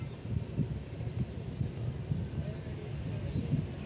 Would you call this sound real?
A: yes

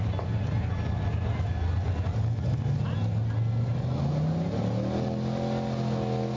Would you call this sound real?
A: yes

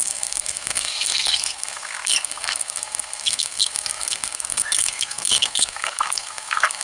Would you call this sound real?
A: no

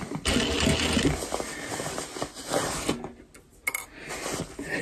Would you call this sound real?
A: yes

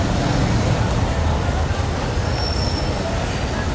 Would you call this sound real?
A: yes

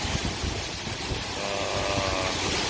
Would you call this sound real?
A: yes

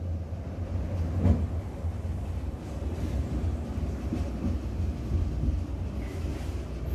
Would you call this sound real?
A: yes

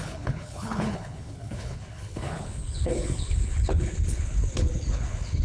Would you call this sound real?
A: no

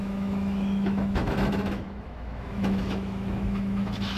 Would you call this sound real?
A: no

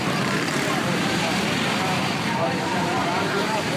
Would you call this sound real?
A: no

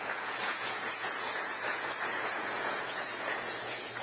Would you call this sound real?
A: no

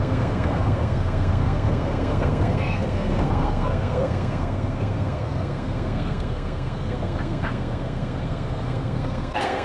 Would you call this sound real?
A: no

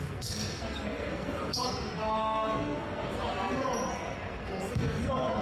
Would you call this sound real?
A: no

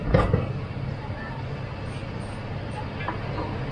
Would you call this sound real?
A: yes